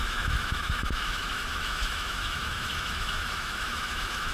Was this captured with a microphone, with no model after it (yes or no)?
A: no